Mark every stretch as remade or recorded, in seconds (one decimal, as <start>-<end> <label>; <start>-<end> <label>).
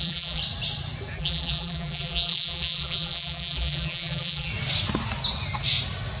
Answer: 0.0-0.4 remade; 0.4-1.2 recorded; 1.2-4.5 remade; 4.5-6.2 recorded